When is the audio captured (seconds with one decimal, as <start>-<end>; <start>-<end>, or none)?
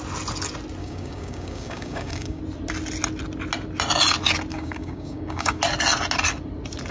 0.0-0.8; 2.4-4.5; 5.6-6.9